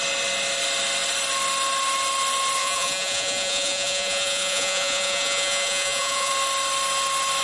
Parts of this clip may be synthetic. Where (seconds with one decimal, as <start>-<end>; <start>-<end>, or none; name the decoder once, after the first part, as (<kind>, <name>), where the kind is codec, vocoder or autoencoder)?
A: 2.6-6.3 (vocoder, Vocos)